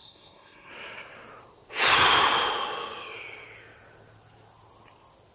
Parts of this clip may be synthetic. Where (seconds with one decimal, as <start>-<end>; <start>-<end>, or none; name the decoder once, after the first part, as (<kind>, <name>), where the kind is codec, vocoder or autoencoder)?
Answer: 0.0-0.7 (codec, SNAC)